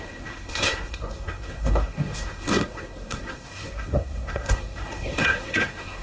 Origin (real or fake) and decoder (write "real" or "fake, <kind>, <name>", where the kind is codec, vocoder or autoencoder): fake, codec, SNAC